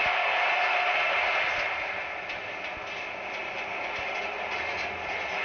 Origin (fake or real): real